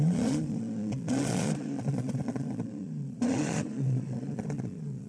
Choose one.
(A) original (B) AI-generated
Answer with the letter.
B